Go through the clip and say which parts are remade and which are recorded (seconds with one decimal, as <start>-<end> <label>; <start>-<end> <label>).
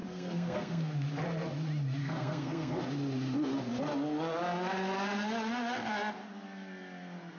0.0-0.9 remade; 0.9-2.0 recorded; 2.0-2.8 remade; 2.8-7.4 recorded